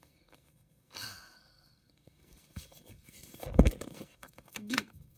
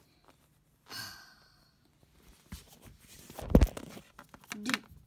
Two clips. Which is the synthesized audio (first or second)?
first